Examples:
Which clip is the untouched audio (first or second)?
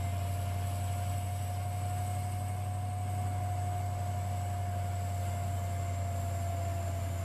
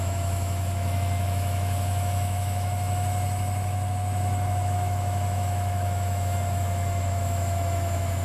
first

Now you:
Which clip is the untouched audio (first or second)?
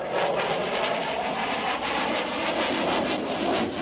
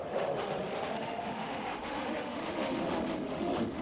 first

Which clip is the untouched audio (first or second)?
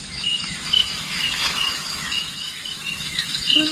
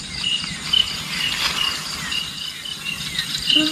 second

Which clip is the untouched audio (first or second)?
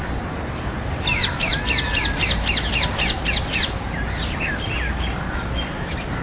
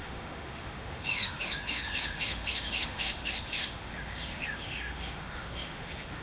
first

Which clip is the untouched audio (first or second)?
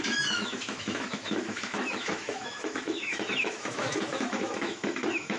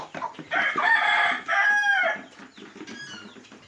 second